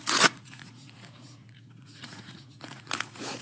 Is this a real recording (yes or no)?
no